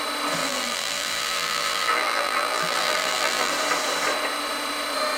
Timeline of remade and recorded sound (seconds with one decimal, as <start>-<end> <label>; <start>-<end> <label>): 0.0-0.4 recorded; 0.4-3.5 remade; 3.5-5.2 recorded